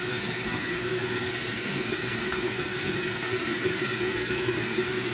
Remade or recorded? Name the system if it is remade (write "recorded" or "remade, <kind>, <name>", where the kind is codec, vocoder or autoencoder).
remade, codec, SNAC